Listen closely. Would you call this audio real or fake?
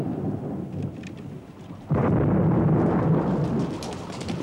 real